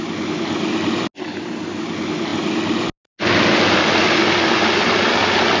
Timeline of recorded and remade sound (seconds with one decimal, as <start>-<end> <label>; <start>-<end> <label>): 0.0-5.6 recorded